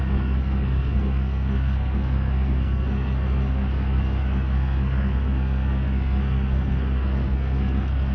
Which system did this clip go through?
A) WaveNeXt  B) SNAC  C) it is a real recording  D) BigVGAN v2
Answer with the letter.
B